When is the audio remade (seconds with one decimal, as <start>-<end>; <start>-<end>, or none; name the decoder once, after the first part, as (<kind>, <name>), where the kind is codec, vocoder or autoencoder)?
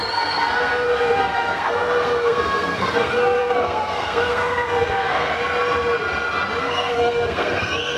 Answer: 0.0-5.3 (codec, SNAC); 6.6-8.0